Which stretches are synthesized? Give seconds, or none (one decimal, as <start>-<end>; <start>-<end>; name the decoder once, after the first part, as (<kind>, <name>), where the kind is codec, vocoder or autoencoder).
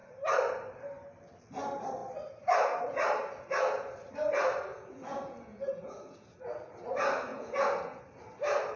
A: 4.7-6.6 (vocoder, Vocos); 7.3-8.0